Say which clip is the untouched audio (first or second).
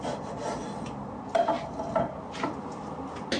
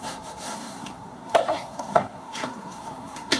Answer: first